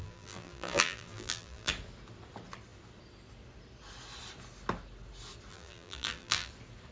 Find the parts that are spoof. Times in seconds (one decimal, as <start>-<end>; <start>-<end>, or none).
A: 0.0-1.7; 5.5-6.5